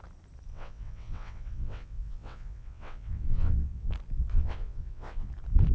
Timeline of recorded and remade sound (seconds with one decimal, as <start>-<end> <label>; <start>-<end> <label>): 0.0-0.5 recorded; 0.5-3.9 remade; 3.9-4.3 recorded; 4.3-5.3 remade; 5.3-5.7 recorded